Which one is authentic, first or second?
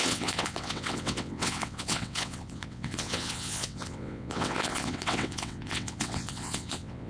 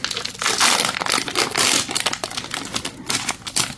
second